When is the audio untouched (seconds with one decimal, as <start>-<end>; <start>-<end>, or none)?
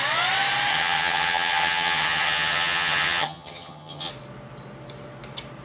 0.0-0.7; 4.1-5.6